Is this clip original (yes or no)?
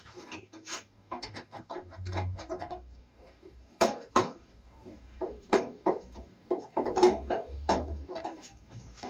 no